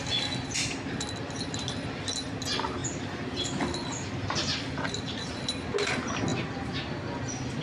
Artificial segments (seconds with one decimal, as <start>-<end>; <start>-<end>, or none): 2.8-5.3; 6.3-6.9